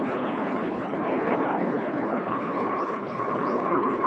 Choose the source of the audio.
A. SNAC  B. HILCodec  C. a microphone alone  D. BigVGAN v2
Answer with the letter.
B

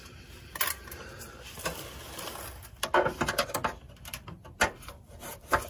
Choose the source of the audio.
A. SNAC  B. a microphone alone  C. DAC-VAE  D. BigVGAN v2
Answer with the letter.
B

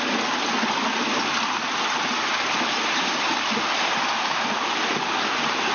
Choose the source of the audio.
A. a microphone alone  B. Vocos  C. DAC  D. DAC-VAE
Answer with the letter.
A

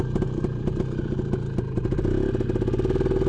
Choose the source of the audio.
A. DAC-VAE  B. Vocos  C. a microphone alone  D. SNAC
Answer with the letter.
C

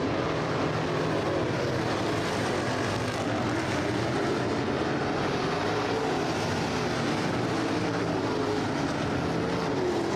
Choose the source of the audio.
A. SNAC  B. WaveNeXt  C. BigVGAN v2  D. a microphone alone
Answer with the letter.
D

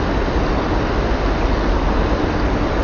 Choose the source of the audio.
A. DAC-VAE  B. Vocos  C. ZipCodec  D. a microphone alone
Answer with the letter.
D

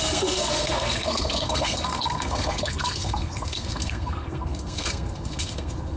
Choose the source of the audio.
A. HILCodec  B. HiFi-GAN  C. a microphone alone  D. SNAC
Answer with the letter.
D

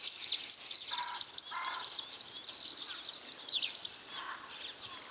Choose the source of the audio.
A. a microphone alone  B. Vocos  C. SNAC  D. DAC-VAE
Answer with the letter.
A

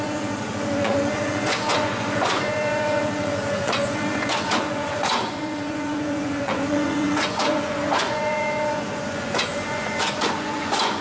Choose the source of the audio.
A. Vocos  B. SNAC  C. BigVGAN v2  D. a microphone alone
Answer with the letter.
A